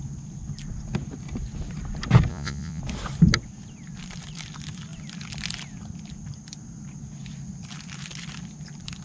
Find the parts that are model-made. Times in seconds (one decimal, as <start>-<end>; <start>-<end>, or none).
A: 2.3-2.8